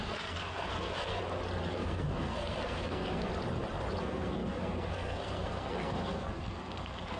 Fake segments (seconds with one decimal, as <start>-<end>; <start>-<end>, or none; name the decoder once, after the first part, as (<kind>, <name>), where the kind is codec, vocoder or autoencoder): 0.0-1.2 (codec, SNAC); 1.7-3.3; 4.0-7.2